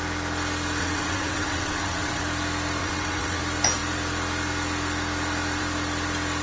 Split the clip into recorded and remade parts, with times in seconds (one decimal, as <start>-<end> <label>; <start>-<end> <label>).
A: 0.0-0.8 recorded; 0.8-2.2 remade; 2.2-2.8 recorded; 2.8-3.4 remade; 3.4-6.4 recorded